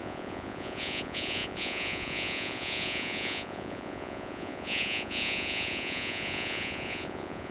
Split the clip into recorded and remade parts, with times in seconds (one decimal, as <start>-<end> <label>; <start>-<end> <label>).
0.0-7.5 remade